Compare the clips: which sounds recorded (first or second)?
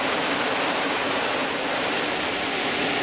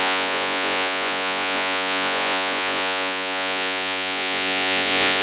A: first